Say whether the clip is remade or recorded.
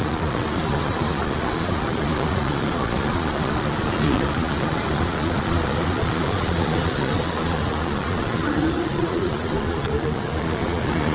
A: remade